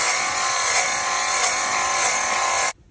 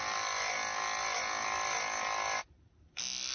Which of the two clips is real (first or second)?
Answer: second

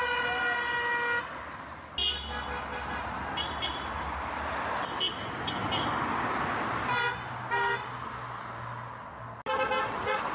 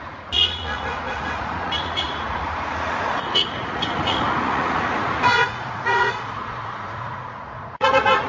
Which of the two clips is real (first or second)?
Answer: first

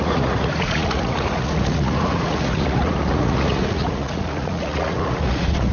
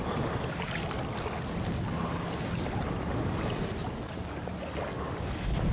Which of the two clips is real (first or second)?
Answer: second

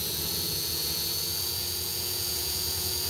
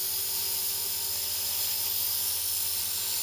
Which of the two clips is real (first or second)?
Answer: second